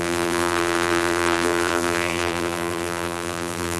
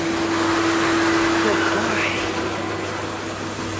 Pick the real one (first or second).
second